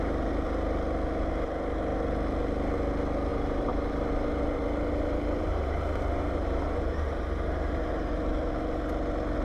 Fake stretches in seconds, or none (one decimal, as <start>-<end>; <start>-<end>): 3.3-7.9